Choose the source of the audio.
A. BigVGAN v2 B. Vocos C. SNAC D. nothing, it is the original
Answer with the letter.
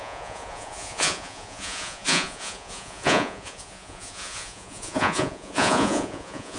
B